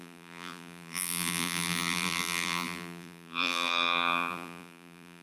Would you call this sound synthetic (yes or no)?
yes